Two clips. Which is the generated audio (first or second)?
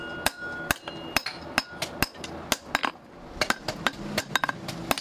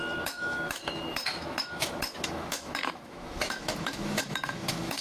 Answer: second